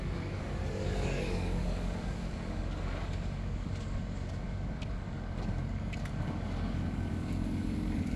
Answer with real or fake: fake